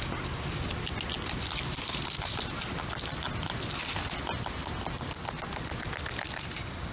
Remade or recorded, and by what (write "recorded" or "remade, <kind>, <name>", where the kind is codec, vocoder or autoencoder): recorded